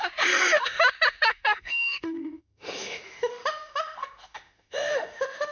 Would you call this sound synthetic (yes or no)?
yes